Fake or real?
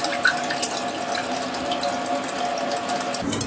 real